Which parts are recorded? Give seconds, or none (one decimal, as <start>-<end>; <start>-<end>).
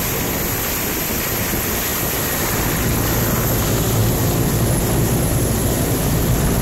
0.0-6.6